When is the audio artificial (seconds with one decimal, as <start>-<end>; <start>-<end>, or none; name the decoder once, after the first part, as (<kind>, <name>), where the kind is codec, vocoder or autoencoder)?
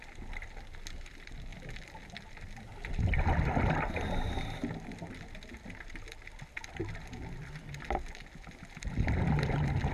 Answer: 1.5-2.9 (vocoder, BigVGAN v2)